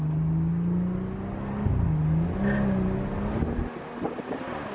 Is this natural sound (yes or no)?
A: yes